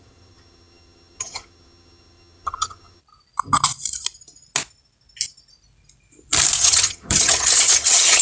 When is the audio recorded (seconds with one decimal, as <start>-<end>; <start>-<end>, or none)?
3.0-6.6